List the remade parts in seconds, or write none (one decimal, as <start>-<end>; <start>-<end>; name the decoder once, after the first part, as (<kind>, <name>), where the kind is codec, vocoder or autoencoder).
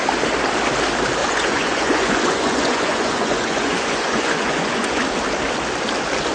1.2-5.0 (vocoder, Vocos)